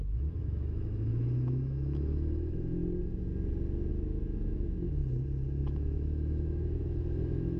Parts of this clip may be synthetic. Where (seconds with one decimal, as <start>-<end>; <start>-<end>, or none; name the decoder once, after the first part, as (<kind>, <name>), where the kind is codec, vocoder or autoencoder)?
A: 0.0-2.8 (autoencoder, DAC-VAE); 3.9-5.0; 5.6-7.6